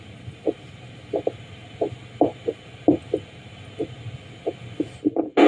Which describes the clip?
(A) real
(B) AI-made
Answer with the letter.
A